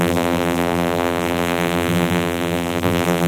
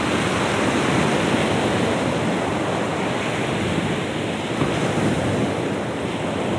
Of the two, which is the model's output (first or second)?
first